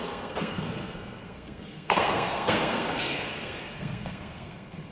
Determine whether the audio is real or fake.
fake